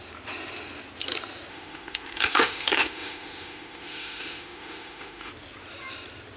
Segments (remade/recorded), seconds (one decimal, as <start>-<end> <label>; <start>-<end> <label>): 0.0-1.5 recorded; 1.5-5.3 remade; 5.3-6.4 recorded